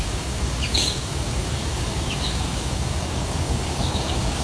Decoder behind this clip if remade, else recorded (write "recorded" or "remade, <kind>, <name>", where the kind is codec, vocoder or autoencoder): remade, codec, DAC